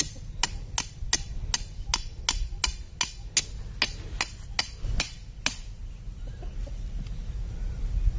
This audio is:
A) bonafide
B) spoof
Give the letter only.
A